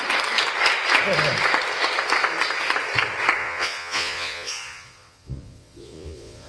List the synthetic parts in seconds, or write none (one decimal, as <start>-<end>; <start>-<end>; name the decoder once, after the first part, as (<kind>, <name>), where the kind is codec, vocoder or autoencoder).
3.4-6.5 (vocoder, Vocos)